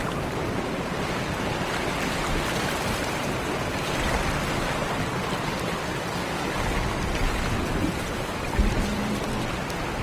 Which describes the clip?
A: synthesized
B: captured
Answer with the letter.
A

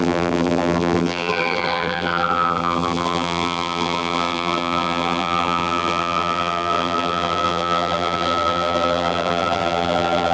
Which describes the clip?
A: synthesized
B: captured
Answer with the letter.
A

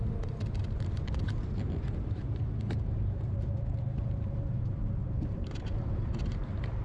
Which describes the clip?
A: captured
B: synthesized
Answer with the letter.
B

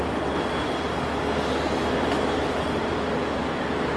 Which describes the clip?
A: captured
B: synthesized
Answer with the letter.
A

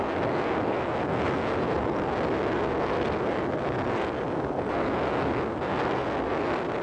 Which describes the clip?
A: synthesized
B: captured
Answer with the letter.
B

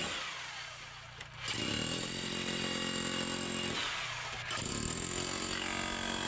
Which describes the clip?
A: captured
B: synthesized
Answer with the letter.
A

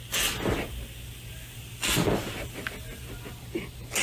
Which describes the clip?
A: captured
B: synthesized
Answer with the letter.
A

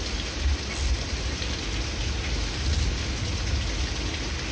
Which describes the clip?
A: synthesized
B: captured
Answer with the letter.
B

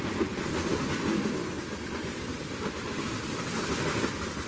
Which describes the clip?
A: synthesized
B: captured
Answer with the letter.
A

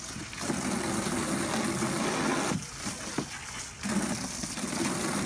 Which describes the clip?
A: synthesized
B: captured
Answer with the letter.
B